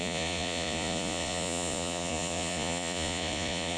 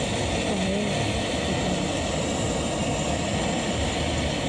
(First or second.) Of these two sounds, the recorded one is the second